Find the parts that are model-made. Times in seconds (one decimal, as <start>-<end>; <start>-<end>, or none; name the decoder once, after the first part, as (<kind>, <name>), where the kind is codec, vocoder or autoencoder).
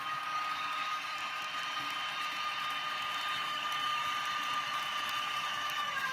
0.0-1.2 (codec, DAC); 3.3-4.1; 5.2-6.1